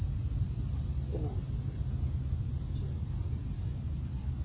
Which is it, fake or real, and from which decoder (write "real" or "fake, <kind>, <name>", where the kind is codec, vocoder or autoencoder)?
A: real